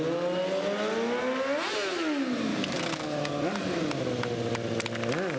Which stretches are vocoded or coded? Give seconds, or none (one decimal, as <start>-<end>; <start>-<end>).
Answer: 2.5-3.3